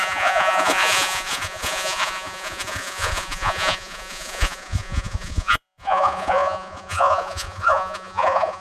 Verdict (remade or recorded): remade